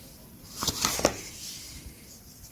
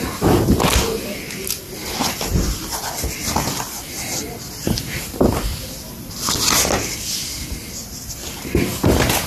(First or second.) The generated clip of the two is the first